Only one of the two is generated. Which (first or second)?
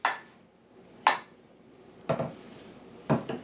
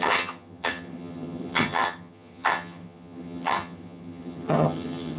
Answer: second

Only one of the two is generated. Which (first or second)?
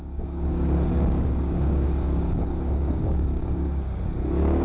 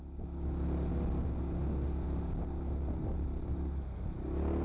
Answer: first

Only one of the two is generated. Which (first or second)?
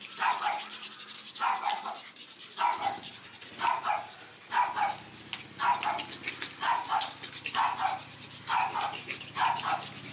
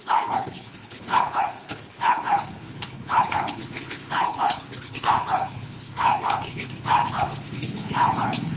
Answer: second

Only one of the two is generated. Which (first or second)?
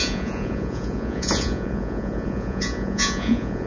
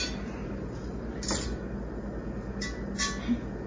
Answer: first